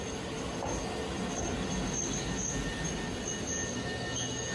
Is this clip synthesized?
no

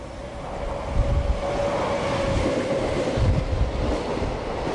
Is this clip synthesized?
no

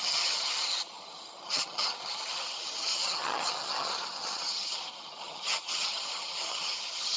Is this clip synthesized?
yes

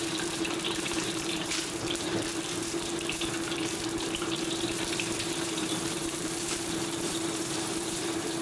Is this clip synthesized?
yes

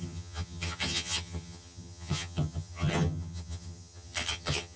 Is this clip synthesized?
yes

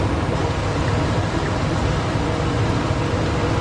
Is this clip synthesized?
no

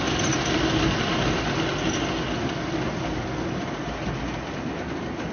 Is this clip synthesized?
no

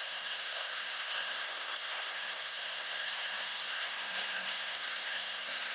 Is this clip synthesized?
yes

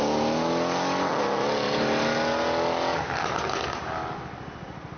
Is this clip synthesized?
no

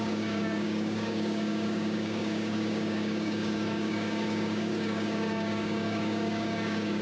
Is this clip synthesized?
yes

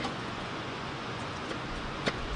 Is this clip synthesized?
yes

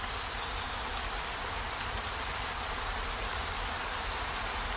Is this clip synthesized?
no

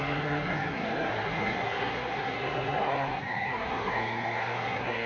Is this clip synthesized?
yes